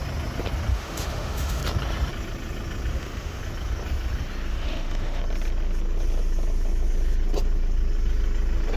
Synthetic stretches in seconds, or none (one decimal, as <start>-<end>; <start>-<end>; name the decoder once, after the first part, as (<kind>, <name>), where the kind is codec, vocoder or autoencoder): 0.7-1.6 (autoencoder, DAC-VAE); 2.9-3.4; 4.5-5.2